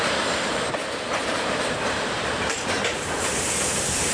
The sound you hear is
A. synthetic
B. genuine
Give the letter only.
A